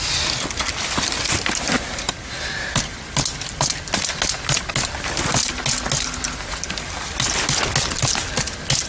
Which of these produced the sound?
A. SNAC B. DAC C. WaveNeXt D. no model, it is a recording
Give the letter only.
D